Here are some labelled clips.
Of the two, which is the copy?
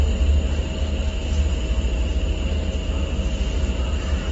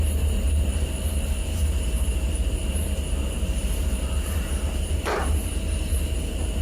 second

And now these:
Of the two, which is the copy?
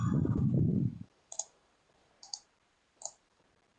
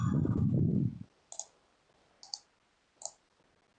first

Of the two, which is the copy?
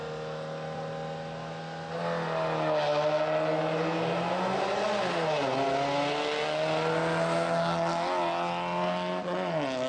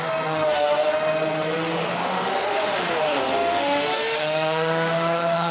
second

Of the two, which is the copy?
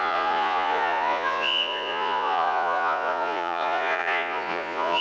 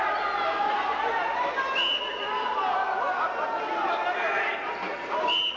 first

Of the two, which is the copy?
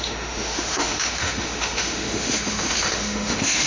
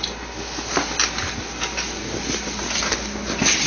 first